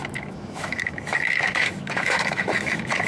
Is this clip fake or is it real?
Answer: fake